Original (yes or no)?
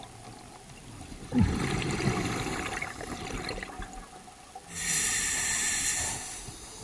yes